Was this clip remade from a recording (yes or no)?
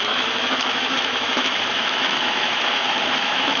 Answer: yes